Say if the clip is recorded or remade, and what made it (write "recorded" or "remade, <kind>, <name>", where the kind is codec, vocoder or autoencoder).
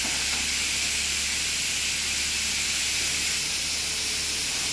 recorded